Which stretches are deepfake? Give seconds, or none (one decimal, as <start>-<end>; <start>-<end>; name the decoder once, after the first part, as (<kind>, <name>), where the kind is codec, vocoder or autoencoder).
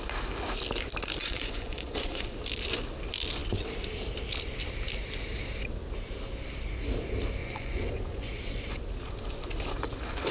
1.2-2.3 (vocoder, Vocos); 7.4-8.3